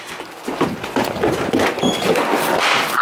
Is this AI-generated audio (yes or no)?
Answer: no